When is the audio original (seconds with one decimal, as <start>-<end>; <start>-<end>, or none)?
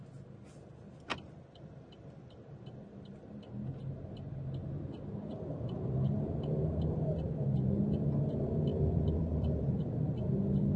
0.0-1.1; 2.4-8.7; 9.7-10.8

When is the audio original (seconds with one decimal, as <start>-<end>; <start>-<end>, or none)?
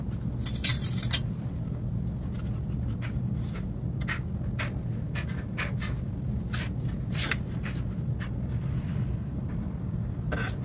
0.0-8.9; 9.5-10.6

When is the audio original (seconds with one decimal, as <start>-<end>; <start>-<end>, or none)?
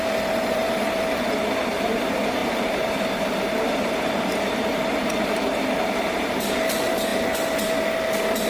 0.0-2.4; 6.5-8.5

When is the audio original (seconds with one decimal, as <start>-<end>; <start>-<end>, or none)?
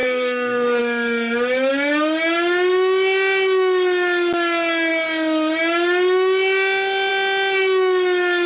0.8-8.5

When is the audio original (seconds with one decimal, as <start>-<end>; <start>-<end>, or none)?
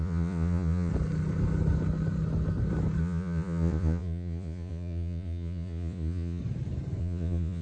0.9-3.0; 6.4-7.0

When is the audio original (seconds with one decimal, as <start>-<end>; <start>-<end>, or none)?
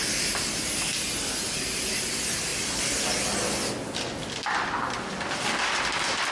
1.0-6.3